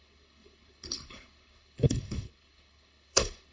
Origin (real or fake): fake